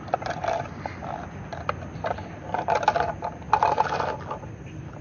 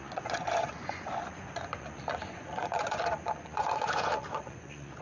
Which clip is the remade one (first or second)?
second